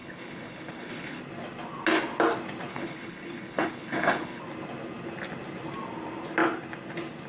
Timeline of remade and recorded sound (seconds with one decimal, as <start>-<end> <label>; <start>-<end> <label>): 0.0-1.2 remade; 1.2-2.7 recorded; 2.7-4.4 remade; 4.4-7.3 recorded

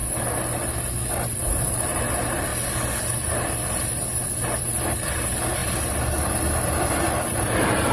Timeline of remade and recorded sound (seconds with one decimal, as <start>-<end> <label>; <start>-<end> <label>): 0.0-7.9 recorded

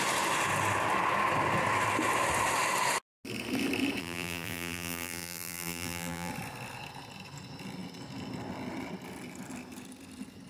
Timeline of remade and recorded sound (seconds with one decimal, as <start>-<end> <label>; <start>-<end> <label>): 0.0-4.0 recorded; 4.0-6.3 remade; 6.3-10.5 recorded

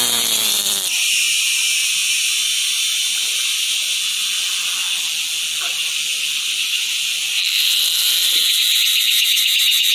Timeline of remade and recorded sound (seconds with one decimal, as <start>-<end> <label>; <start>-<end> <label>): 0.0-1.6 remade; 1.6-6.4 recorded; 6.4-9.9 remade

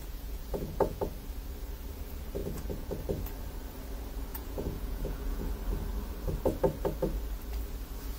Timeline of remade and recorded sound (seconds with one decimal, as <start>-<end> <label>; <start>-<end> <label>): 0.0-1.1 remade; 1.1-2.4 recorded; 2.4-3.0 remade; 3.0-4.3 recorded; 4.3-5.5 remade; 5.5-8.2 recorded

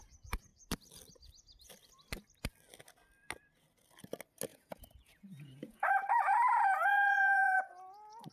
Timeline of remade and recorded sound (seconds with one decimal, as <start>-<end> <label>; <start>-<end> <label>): 0.0-4.5 recorded; 4.5-7.6 remade; 7.6-8.3 recorded

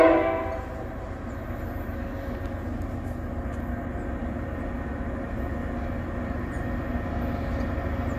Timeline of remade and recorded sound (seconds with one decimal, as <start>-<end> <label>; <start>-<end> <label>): 0.0-8.2 recorded